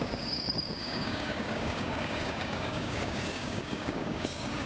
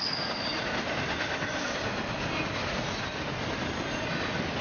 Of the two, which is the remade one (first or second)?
first